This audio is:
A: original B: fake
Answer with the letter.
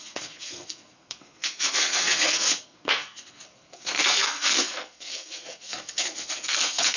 B